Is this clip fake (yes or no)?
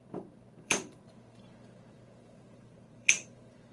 yes